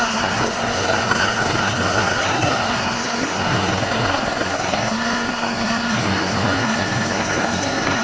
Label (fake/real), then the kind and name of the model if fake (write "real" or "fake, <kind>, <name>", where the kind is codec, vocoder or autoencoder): fake, codec, SNAC